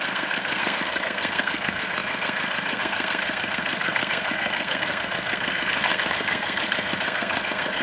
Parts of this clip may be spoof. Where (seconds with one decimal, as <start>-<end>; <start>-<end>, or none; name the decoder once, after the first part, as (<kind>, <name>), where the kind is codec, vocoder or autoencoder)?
0.0-7.8 (codec, SNAC)

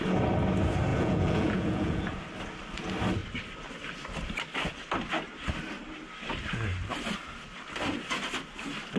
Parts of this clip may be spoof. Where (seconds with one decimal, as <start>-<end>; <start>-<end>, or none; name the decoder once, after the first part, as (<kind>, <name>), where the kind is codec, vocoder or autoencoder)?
0.9-2.0 (vocoder, Vocos)

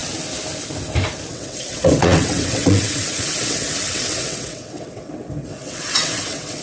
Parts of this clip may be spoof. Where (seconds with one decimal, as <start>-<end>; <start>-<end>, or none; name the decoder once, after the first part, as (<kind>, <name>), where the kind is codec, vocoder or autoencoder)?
1.3-6.6 (vocoder, WaveNeXt)

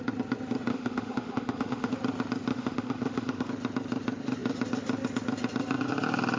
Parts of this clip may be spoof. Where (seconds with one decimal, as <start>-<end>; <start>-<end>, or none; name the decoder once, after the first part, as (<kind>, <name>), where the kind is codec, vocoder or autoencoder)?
0.7-1.9 (autoencoder, DAC-VAE); 2.5-3.5

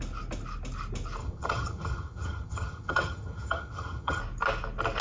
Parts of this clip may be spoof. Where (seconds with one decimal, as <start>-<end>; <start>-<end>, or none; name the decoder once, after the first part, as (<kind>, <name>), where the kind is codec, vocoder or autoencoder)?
1.2-4.2 (vocoder, HiFi-GAN)

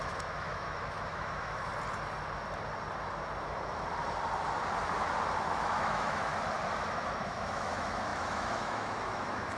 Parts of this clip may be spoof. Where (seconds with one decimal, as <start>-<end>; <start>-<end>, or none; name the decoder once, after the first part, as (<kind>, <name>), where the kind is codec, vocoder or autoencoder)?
0.0-1.7 (autoencoder, DAC-VAE); 5.4-6.3; 6.9-9.6